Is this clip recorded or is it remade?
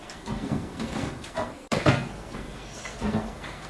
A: remade